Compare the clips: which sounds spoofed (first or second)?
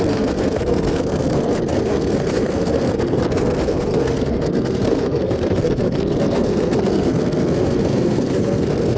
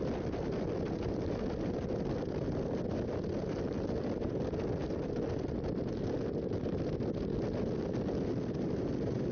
first